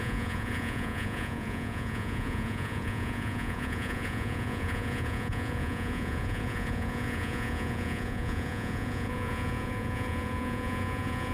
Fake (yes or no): yes